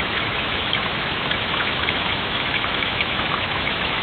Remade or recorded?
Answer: remade